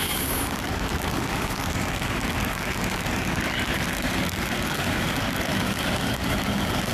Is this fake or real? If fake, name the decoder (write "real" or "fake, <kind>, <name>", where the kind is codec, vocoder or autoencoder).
fake, codec, DAC